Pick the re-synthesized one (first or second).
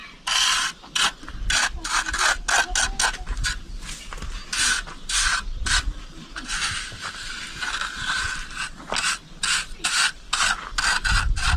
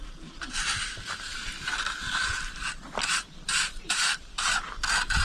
second